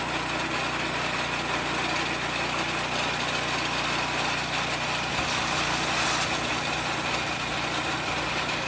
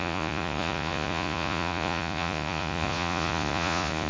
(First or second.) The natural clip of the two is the first